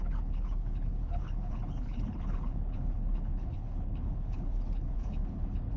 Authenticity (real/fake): fake